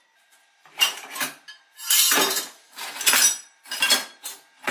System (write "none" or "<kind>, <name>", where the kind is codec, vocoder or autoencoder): vocoder, BigVGAN v2